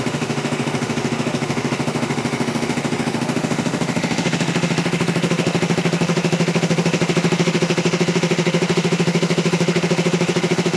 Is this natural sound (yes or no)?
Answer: no